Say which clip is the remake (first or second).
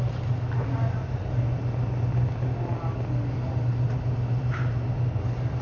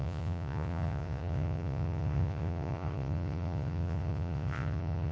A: second